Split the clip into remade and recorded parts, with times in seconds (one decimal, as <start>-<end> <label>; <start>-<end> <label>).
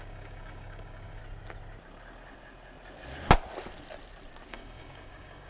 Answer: 0.0-1.2 remade; 1.2-4.5 recorded; 4.5-5.5 remade